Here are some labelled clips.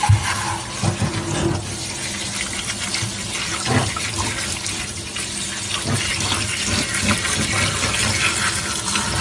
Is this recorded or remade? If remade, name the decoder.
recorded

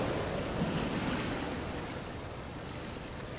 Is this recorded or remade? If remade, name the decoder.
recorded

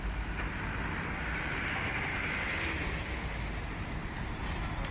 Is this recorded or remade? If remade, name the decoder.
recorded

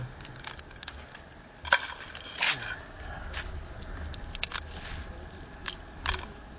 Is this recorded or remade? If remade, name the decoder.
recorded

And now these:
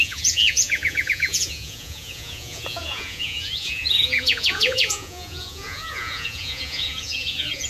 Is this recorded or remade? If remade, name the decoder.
remade, vocoder, Vocos